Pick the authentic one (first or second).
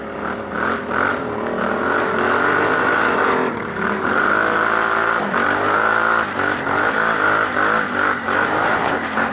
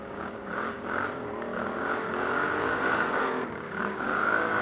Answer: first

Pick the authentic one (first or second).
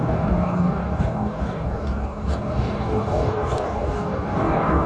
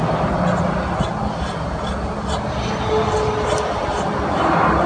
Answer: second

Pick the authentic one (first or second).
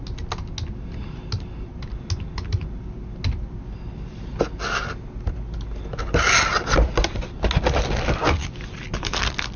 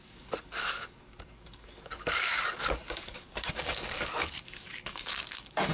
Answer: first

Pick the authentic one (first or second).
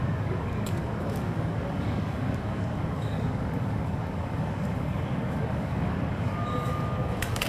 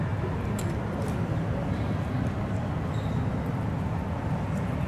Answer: second